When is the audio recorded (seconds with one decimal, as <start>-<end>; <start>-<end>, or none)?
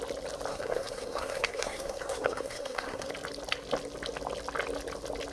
0.0-0.5; 3.1-5.3